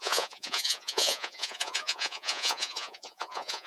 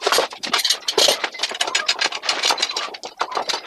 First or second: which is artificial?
first